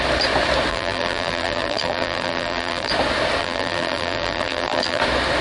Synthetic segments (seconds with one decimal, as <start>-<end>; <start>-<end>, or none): 0.7-2.9; 3.4-5.0